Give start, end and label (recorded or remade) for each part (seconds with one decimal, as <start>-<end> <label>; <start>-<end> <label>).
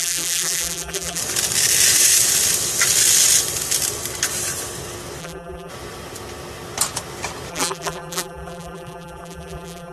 0.0-1.2 remade; 1.2-5.2 recorded; 5.2-5.7 remade; 5.7-7.5 recorded; 7.5-9.9 remade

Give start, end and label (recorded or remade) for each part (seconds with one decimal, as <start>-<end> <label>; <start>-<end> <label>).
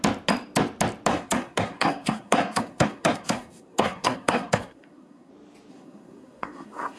0.0-1.1 recorded; 1.1-5.3 remade; 5.3-5.7 recorded; 5.7-7.0 remade